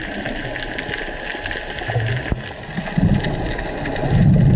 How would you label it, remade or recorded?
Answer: recorded